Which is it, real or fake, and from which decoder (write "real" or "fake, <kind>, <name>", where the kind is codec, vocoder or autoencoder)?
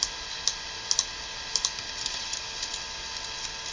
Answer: real